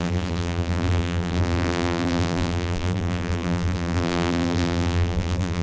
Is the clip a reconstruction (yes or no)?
yes